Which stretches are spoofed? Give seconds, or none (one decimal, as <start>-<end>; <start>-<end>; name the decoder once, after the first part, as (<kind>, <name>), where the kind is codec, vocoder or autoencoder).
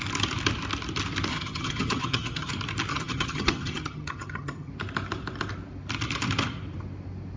1.3-2.5 (vocoder, HiFi-GAN); 2.9-4.7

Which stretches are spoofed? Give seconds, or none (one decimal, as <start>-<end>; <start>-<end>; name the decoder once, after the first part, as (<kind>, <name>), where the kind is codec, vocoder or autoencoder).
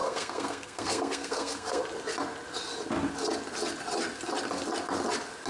0.0-1.8 (codec, SNAC)